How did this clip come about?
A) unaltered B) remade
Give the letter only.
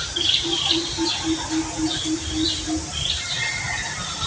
A